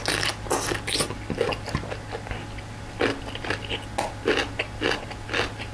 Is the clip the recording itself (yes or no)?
yes